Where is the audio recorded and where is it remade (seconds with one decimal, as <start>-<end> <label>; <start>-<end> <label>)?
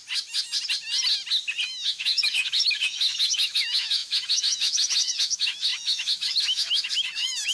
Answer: 0.0-1.7 recorded; 1.7-7.5 remade